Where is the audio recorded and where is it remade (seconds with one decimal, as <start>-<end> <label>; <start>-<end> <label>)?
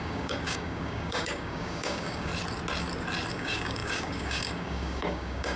0.0-2.3 remade; 2.3-3.3 recorded; 3.3-5.6 remade